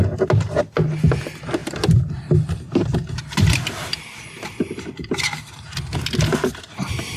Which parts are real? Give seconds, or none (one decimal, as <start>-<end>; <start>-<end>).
0.0-1.6; 5.5-7.2